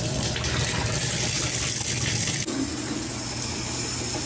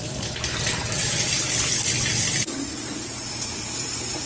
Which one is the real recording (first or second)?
first